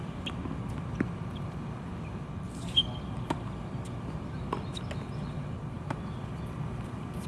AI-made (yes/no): no